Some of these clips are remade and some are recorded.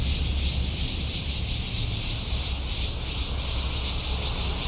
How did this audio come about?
recorded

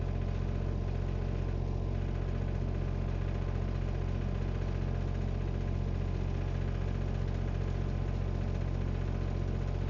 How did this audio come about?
recorded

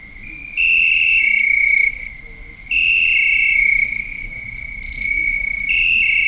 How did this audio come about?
recorded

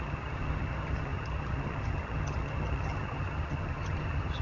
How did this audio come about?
remade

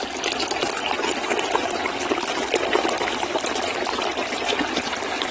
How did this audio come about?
recorded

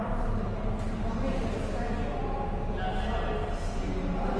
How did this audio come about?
recorded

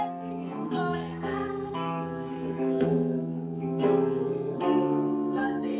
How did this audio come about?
remade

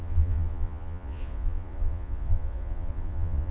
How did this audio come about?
remade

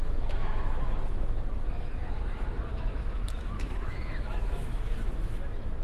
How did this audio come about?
remade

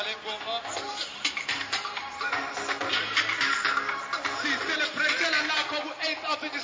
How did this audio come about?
recorded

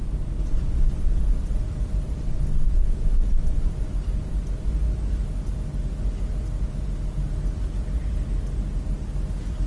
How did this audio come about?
recorded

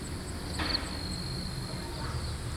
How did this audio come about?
recorded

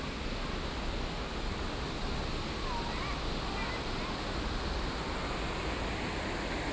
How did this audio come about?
recorded